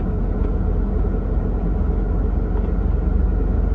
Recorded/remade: recorded